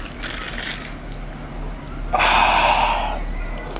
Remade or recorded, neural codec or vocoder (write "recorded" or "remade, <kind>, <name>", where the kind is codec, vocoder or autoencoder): recorded